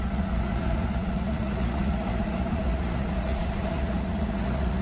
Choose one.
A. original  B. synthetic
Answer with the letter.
B